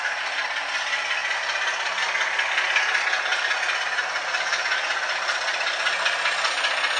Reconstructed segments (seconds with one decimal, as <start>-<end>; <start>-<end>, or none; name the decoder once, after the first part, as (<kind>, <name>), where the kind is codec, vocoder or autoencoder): none